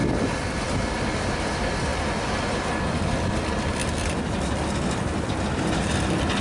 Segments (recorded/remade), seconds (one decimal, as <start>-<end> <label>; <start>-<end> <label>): 0.0-6.4 recorded